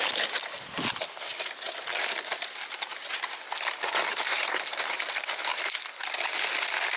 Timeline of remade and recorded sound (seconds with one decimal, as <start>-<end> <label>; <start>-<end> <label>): 0.0-7.0 recorded